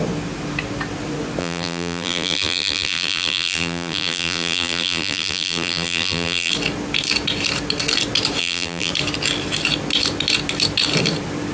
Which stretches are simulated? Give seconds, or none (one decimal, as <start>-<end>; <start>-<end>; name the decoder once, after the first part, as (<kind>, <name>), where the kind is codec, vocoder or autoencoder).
1.4-6.5 (vocoder, BigVGAN v2); 8.4-8.9